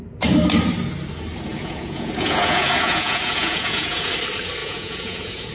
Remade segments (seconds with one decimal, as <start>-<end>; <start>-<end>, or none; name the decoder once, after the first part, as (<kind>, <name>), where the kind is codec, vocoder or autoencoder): 1.5-4.1 (vocoder, Vocos); 4.6-5.5

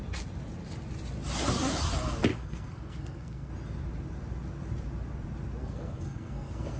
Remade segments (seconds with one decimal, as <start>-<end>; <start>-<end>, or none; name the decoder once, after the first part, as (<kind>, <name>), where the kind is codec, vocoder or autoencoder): 2.3-3.5 (codec, SNAC); 5.6-6.8

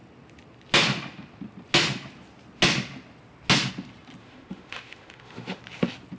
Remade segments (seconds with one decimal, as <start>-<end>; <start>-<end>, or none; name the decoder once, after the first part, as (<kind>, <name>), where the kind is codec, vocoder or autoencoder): 4.2-5.6 (autoencoder, DAC-VAE)

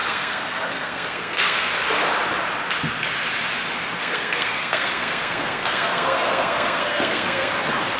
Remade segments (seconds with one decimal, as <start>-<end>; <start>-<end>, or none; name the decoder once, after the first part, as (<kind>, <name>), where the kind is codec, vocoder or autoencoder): 0.0-1.7 (codec, SNAC); 4.0-7.5

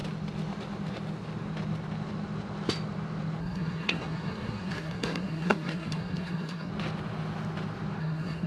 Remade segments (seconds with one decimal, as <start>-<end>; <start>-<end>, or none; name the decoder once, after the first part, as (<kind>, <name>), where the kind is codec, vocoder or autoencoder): 3.4-6.7 (codec, SNAC); 8.0-8.5

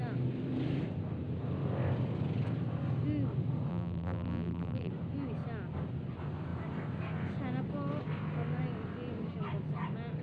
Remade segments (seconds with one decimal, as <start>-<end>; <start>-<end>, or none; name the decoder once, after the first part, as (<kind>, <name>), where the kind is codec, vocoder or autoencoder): 3.7-4.9 (vocoder, BigVGAN v2)

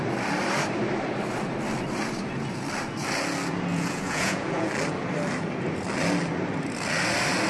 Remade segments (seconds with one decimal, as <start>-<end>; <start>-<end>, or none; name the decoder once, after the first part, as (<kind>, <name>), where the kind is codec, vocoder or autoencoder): 3.7-4.7 (vocoder, Vocos)

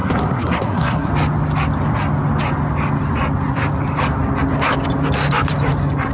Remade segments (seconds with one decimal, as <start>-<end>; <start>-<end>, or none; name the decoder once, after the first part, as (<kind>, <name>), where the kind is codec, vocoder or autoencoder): 0.0-1.1 (codec, SNAC)